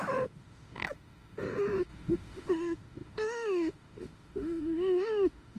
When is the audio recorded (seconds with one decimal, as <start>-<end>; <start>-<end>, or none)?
none